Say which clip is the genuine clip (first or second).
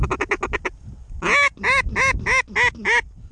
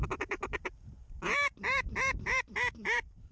first